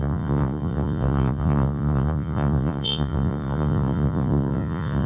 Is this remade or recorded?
remade